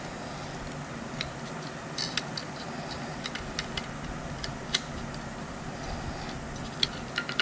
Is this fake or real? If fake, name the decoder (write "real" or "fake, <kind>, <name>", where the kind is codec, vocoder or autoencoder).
real